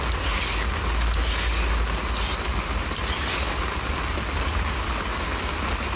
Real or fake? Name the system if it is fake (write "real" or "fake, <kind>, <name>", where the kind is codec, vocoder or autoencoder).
real